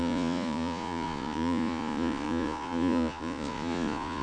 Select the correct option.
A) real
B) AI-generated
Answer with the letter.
B